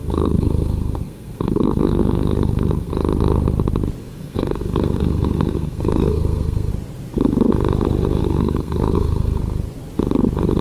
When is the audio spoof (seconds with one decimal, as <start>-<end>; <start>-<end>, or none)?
0.0-2.9; 4.0-6.7; 8.2-9.4